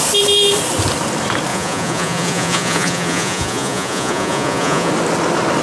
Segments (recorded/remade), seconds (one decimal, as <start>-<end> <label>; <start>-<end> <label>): 0.0-1.5 recorded; 1.5-4.9 remade; 4.9-5.6 recorded